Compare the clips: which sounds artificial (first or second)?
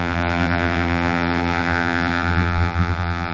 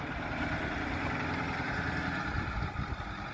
first